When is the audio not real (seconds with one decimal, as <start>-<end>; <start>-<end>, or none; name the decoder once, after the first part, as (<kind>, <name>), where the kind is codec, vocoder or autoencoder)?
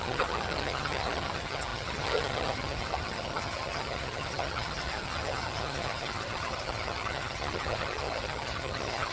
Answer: 0.0-9.1 (vocoder, HiFi-GAN)